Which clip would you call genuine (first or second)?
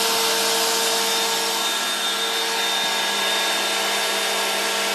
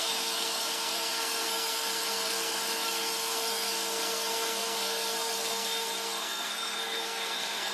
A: first